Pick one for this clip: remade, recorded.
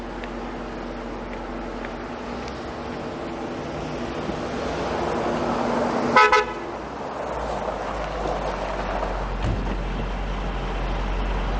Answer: recorded